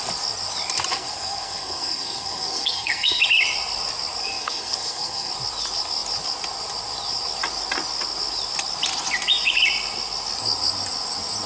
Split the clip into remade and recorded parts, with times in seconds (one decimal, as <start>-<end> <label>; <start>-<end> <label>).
0.0-0.9 recorded; 0.9-3.2 remade; 3.2-4.2 recorded; 4.2-5.3 remade; 5.3-11.5 recorded

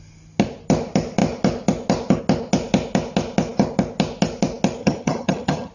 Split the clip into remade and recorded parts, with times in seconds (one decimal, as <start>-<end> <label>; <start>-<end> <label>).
0.0-4.8 recorded; 4.8-5.7 remade

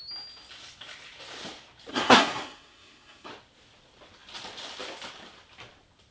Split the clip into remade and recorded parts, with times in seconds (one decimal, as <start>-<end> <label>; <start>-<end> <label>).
0.0-1.9 recorded; 1.9-3.3 remade; 3.3-6.1 recorded

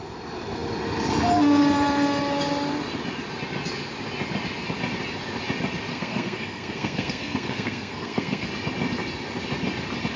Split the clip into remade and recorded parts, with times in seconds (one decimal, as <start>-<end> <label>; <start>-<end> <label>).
0.0-5.9 recorded; 5.9-8.5 remade; 8.5-10.2 recorded

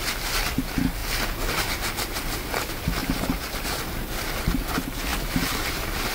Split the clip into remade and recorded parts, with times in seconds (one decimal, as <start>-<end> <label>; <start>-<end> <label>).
0.0-3.0 recorded; 3.0-3.8 remade; 3.8-5.1 recorded; 5.1-6.1 remade

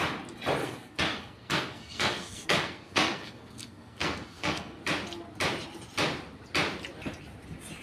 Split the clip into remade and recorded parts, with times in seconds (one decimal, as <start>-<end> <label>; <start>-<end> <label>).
0.0-0.6 recorded; 0.6-4.8 remade; 4.8-7.8 recorded

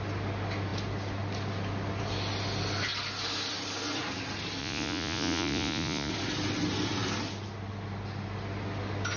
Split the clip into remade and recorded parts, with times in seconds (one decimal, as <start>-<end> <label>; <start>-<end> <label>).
0.0-4.6 recorded; 4.6-6.1 remade; 6.1-9.2 recorded

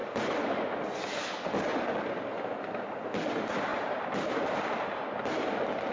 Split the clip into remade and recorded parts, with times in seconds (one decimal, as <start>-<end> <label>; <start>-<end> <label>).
0.0-5.9 recorded